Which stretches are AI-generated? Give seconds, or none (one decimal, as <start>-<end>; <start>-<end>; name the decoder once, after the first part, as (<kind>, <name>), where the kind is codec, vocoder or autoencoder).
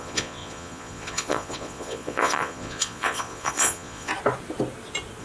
0.0-4.1 (vocoder, Vocos)